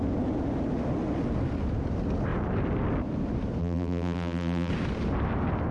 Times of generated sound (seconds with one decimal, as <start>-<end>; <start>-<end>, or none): 3.6-4.7